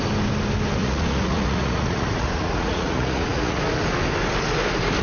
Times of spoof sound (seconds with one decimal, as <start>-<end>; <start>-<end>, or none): 0.8-3.6